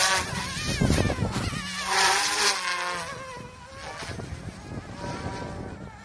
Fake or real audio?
real